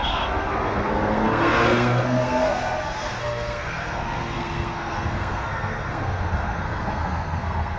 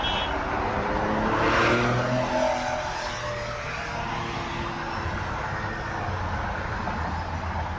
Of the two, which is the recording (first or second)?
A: second